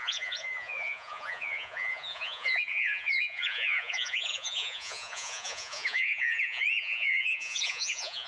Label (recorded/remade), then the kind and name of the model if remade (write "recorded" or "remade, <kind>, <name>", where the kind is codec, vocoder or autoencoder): remade, vocoder, Vocos